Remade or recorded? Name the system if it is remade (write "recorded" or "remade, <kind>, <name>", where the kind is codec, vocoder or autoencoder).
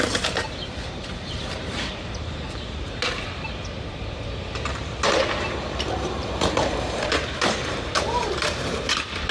remade, vocoder, BigVGAN v2